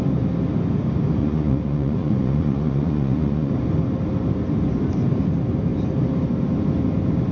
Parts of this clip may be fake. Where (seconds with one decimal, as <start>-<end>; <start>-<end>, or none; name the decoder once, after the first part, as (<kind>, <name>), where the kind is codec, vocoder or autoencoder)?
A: 1.2-3.5 (vocoder, Vocos)